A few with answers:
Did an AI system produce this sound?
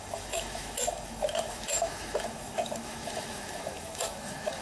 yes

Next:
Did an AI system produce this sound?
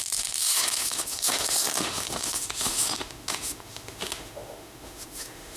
yes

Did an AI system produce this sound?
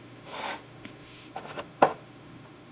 yes